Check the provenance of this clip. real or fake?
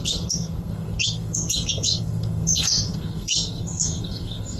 fake